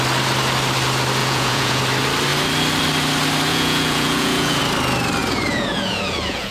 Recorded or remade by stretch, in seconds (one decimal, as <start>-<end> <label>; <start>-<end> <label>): 0.0-1.2 recorded; 1.2-1.8 remade; 1.8-3.5 recorded; 3.5-4.6 remade; 4.6-5.2 recorded; 5.2-6.5 remade